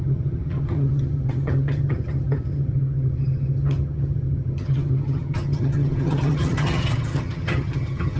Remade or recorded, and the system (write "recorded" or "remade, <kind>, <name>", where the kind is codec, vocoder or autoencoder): remade, vocoder, HiFi-GAN